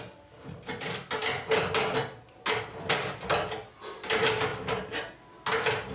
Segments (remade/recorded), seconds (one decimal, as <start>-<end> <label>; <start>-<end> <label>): 0.0-5.9 recorded